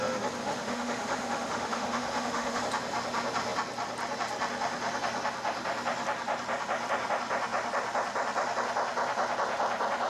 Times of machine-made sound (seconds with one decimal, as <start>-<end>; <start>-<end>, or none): 0.4-2.6